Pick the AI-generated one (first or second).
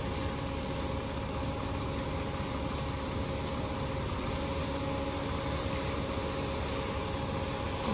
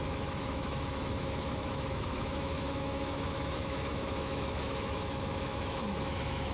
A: second